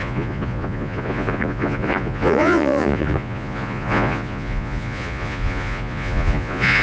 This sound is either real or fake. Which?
fake